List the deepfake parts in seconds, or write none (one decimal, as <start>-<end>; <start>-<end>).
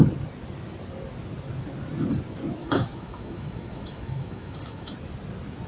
2.6-4.9